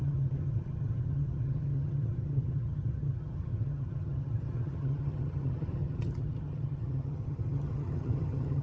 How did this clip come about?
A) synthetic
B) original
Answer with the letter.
A